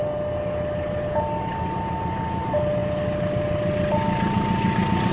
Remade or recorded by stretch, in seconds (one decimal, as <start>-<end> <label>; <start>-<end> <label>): 0.0-5.1 recorded